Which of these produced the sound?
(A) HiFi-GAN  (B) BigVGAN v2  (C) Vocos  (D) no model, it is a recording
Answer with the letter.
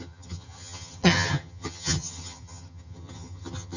A